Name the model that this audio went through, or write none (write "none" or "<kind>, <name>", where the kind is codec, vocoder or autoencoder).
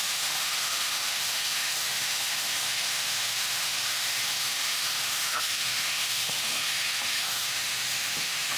autoencoder, DAC-VAE